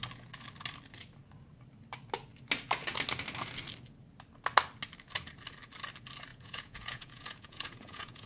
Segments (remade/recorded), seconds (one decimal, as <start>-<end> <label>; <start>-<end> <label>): 0.0-6.3 recorded; 6.3-8.3 remade